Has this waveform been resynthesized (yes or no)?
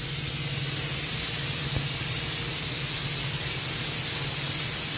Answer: no